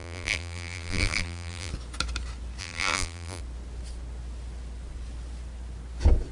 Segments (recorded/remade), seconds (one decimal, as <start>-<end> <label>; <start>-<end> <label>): 0.0-1.7 remade; 1.7-2.6 recorded; 2.6-3.4 remade; 3.4-6.3 recorded